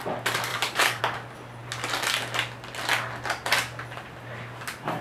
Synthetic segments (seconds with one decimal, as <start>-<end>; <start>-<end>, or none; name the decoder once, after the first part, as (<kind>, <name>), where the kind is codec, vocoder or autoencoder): 0.5-1.0 (codec, DAC)